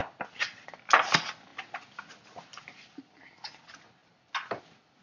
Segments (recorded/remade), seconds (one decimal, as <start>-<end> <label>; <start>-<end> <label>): 0.0-5.0 recorded